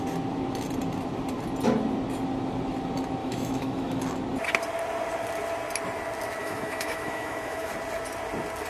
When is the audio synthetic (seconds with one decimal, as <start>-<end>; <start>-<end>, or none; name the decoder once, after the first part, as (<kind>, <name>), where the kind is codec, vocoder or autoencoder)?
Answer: 3.2-4.0 (autoencoder, DAC-VAE); 6.4-7.7